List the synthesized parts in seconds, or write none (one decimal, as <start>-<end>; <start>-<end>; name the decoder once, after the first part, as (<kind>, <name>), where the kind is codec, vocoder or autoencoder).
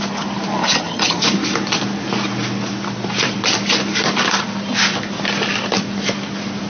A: 0.6-1.2 (vocoder, HiFi-GAN)